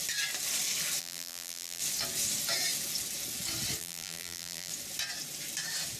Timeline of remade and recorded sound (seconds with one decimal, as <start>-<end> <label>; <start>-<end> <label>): 0.0-1.0 recorded; 1.0-1.8 remade; 1.8-3.8 recorded; 3.8-4.7 remade; 4.7-6.0 recorded